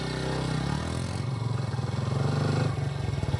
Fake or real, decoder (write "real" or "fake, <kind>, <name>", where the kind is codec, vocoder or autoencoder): real